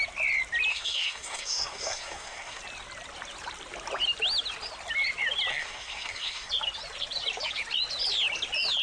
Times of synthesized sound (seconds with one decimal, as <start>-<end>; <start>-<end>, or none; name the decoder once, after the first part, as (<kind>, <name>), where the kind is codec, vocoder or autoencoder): 0.7-2.6 (codec, SNAC); 5.5-6.5